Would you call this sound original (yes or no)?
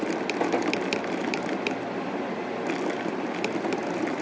yes